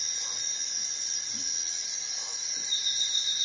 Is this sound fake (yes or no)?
no